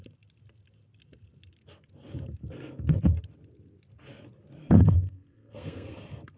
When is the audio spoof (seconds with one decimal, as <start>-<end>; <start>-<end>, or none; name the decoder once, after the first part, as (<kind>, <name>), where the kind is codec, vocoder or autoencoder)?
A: 2.4-3.0 (codec, SNAC); 4.6-6.0